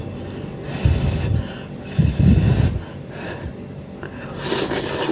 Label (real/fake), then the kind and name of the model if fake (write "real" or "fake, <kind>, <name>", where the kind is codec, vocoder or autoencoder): real